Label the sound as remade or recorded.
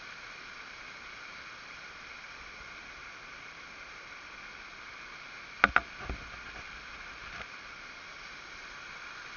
recorded